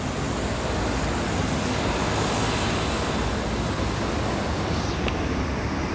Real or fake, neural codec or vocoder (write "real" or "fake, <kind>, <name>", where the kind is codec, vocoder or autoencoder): real